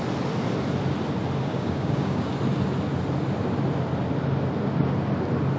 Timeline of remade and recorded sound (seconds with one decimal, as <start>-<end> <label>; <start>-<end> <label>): 0.0-1.5 recorded; 1.5-2.3 remade; 2.3-5.6 recorded